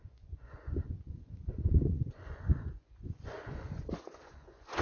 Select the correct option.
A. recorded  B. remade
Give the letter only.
B